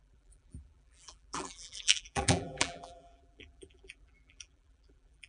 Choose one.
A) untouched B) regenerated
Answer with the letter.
B